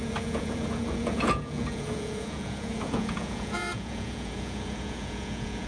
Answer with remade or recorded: remade